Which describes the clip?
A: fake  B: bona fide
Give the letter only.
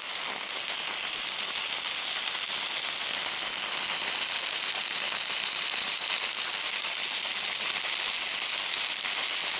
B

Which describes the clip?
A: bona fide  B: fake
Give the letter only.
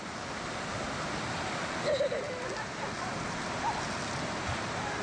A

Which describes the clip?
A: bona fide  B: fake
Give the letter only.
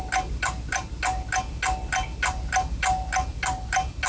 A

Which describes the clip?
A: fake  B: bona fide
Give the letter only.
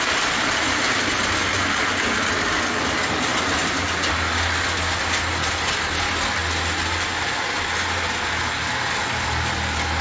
B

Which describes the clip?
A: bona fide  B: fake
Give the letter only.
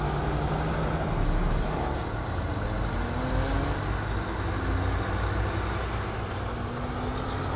A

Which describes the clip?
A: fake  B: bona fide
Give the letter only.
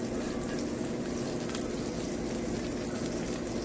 B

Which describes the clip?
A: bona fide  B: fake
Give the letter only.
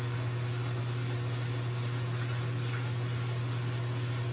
A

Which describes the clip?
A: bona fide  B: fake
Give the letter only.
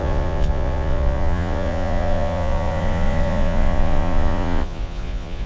B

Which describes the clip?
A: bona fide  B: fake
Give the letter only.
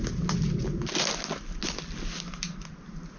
A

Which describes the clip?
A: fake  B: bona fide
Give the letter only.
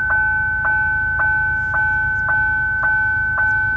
B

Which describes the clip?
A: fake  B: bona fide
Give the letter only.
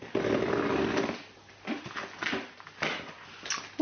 B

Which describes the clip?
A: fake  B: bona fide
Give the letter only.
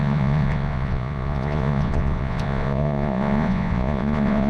A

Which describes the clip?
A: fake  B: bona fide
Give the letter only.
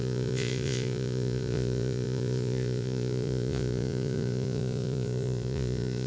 A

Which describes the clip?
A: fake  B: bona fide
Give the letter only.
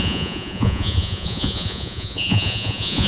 A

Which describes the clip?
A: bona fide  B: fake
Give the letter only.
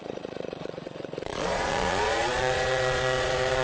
B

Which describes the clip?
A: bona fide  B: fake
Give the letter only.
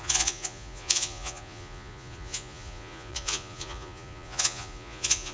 B